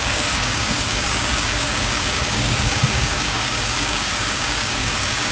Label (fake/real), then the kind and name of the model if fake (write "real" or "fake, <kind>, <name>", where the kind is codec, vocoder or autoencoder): fake, codec, DAC